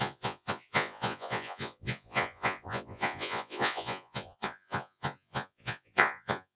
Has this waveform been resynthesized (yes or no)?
yes